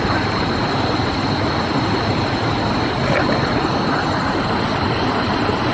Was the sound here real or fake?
real